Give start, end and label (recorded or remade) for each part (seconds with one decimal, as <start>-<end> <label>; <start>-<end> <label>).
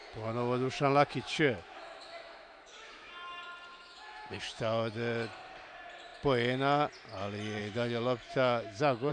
0.0-3.1 remade; 3.1-3.7 recorded; 3.7-4.9 remade; 4.9-7.6 recorded; 7.6-9.1 remade